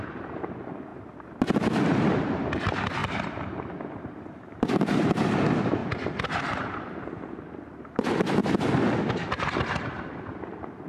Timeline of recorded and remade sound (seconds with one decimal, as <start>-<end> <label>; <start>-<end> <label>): 0.0-5.8 remade; 5.8-6.4 recorded; 6.4-10.9 remade